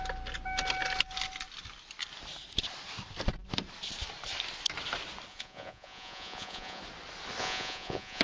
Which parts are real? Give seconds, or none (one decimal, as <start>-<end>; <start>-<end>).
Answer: 0.0-5.3; 6.8-7.4